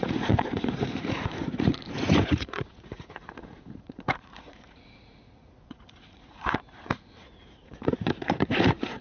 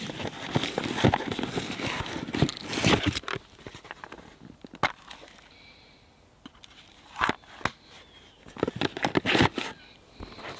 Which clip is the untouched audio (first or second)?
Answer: second